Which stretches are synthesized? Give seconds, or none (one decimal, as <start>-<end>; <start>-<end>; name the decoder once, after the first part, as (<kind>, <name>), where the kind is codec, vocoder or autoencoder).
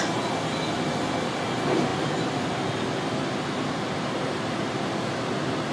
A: none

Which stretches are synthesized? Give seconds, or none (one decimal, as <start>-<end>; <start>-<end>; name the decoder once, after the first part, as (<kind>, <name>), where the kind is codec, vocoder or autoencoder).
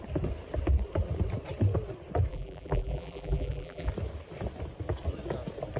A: 2.3-3.9 (vocoder, BigVGAN v2)